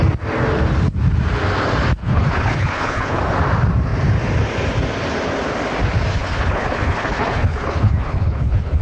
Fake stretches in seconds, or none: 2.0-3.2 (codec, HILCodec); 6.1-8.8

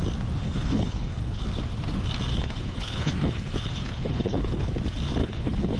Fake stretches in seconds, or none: 0.4-1.4 (codec, HILCodec); 2.3-4.7; 5.2-5.8

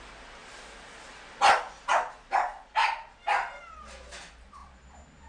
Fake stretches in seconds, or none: none